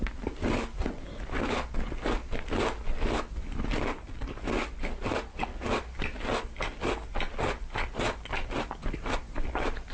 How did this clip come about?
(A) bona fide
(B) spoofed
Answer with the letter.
A